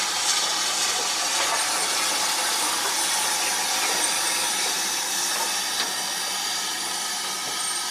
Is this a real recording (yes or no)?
yes